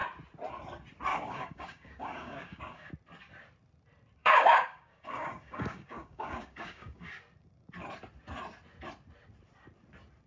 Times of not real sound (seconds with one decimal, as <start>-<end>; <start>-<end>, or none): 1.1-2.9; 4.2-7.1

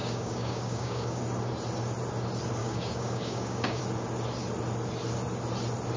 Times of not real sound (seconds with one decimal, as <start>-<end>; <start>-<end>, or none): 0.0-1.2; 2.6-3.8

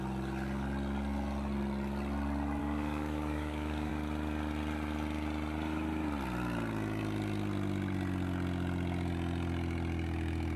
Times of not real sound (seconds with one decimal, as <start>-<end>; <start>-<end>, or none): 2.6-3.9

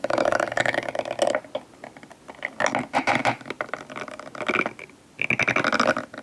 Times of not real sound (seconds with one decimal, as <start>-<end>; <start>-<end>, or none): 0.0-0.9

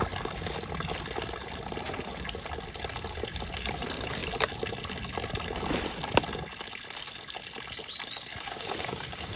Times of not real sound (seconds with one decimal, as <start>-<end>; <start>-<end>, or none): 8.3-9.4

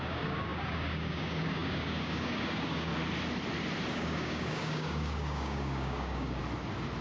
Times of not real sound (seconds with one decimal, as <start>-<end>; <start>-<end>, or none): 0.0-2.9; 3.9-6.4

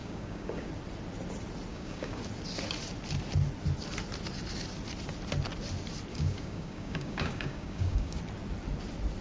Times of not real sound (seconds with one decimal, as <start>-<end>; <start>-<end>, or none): 0.0-0.7; 1.7-2.2; 6.1-8.2